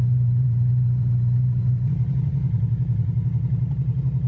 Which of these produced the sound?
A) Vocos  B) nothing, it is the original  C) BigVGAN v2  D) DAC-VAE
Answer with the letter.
C